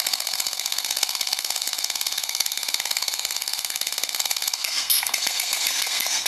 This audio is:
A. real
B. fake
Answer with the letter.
B